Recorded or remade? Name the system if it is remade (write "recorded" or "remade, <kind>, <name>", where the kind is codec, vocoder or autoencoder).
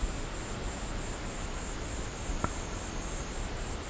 recorded